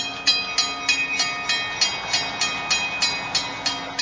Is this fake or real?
real